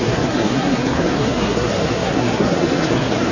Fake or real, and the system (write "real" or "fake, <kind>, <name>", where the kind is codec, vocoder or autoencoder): fake, codec, SNAC